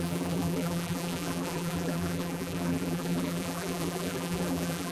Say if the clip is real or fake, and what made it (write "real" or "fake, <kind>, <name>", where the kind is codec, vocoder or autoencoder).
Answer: fake, vocoder, BigVGAN v2